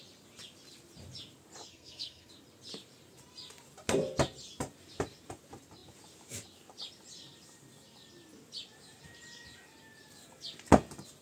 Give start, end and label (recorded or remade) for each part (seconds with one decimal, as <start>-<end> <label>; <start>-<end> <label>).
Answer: 0.0-1.7 recorded; 1.7-2.3 remade; 2.3-11.2 recorded